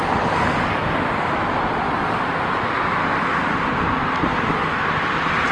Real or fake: real